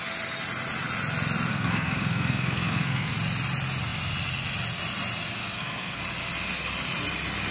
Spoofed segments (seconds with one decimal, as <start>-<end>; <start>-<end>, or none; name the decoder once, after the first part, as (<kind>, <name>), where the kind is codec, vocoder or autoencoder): 1.5-3.1 (codec, SNAC); 5.4-6.0

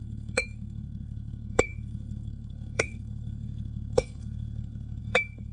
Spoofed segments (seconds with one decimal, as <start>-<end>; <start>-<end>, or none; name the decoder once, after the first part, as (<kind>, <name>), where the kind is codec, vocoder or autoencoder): 0.0-5.5 (codec, SNAC)